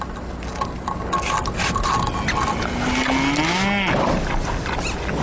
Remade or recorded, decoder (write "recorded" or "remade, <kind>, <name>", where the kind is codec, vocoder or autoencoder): recorded